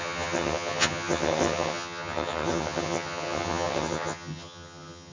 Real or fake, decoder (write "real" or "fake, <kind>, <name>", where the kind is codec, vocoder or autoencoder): fake, vocoder, HiFi-GAN